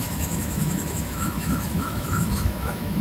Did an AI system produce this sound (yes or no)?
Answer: yes